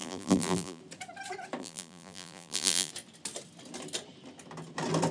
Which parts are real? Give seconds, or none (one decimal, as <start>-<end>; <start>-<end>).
0.8-1.6; 2.9-5.1